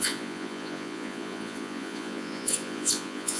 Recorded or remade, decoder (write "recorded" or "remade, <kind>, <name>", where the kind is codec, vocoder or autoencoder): remade, vocoder, Vocos